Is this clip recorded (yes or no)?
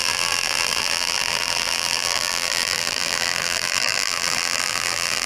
no